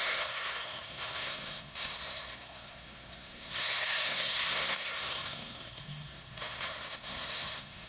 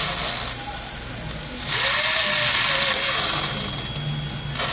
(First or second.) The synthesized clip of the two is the first